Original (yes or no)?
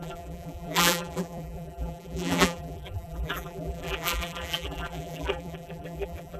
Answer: no